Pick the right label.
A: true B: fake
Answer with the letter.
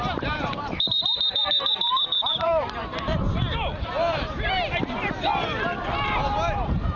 B